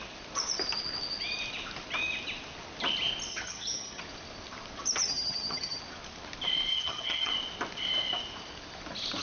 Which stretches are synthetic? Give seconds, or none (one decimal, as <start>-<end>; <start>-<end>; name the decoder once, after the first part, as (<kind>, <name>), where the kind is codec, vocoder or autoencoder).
3.3-4.0 (vocoder, HiFi-GAN); 5.0-5.8; 6.7-7.3